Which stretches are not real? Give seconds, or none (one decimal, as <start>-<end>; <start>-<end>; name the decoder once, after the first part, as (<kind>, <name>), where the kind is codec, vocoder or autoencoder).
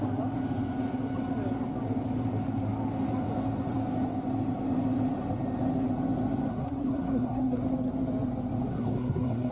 6.5-7.6 (codec, SNAC); 8.7-9.5